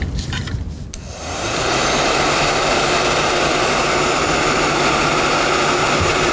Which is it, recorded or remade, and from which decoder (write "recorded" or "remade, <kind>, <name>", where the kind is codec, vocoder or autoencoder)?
recorded